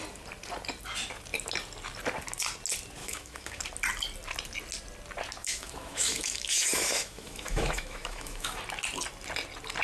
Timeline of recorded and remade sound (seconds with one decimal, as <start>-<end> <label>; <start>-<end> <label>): 0.0-3.0 recorded; 3.0-3.6 remade; 3.6-5.4 recorded; 5.4-8.6 remade; 8.6-9.8 recorded